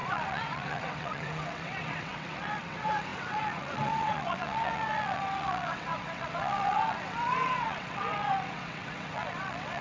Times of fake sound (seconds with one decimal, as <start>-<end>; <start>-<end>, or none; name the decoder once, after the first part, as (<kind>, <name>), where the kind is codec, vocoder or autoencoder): 0.0-9.8 (vocoder, WaveNeXt)